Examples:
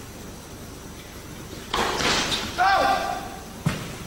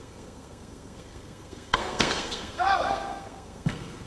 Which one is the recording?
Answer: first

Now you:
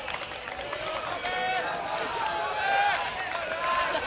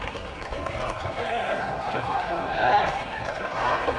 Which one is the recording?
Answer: first